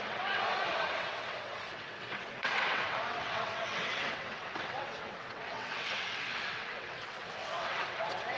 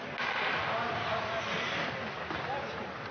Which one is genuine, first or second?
second